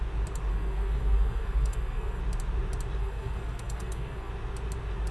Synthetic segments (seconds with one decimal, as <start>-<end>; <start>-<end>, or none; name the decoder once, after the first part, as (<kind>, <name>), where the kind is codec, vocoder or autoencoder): 0.5-2.2 (codec, SNAC); 3.0-4.3